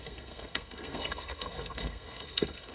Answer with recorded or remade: remade